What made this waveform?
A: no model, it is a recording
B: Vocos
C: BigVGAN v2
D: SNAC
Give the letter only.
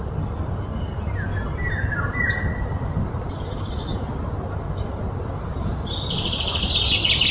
A